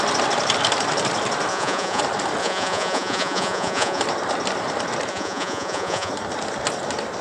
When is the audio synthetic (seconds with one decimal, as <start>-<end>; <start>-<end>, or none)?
1.5-2.0; 2.4-4.0; 5.1-6.1